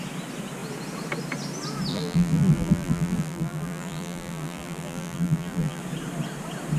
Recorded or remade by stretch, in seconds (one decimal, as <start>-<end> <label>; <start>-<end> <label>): 0.0-1.9 recorded; 1.9-5.8 remade; 5.8-6.8 recorded